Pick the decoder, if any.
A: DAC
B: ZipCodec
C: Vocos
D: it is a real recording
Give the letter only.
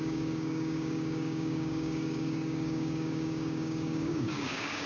A